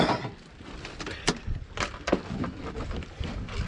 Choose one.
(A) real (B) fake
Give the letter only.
A